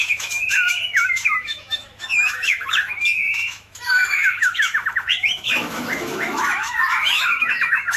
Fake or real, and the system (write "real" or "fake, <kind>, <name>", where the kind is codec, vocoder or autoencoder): fake, autoencoder, DAC-VAE